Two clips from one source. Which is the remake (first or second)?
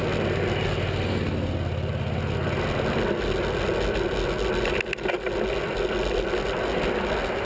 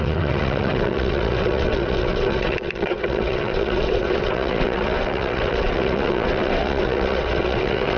second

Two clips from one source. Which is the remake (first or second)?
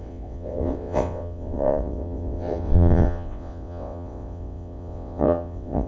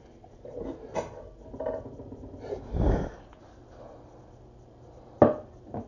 first